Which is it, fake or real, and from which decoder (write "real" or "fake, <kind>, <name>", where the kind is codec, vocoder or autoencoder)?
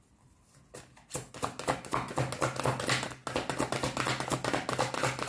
real